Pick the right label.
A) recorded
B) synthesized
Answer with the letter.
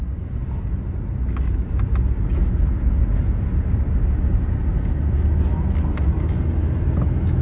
A